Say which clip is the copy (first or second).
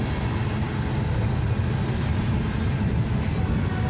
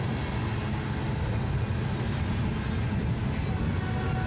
first